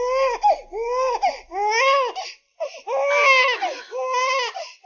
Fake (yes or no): no